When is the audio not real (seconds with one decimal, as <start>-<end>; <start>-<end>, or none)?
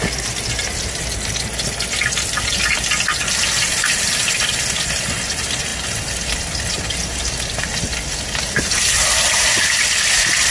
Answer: none